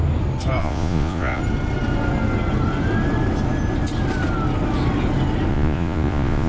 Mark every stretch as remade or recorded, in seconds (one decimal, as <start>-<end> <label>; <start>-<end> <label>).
0.0-0.6 recorded; 0.6-1.4 remade; 1.4-5.5 recorded; 5.5-6.5 remade